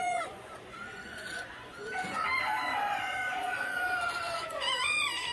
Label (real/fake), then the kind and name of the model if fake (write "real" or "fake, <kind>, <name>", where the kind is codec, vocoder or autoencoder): fake, vocoder, Vocos